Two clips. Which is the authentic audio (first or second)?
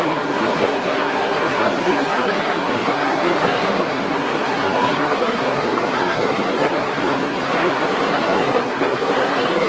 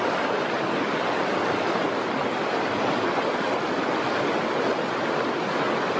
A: second